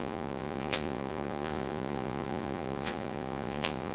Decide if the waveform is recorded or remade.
remade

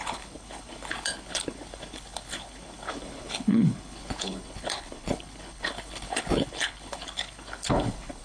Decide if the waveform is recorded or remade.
remade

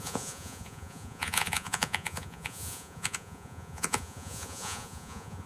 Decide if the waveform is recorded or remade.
remade